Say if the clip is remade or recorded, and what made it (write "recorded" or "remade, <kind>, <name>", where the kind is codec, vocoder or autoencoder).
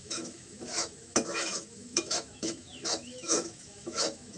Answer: remade, autoencoder, DAC-VAE